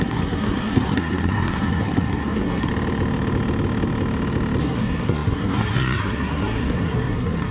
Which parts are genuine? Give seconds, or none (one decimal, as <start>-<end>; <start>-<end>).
2.7-4.6